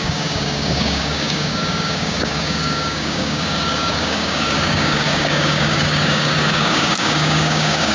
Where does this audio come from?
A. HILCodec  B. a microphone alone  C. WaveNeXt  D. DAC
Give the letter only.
D